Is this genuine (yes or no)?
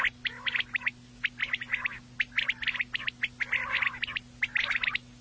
yes